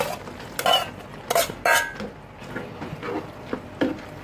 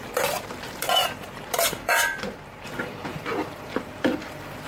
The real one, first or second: first